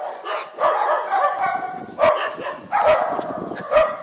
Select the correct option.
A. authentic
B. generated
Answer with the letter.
B